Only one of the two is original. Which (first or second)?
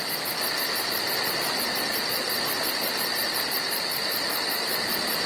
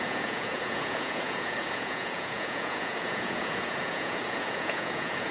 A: first